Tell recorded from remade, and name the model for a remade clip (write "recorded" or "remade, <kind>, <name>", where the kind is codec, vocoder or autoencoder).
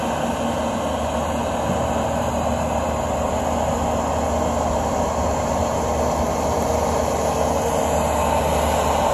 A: recorded